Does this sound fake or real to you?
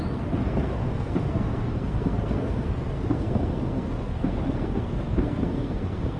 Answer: fake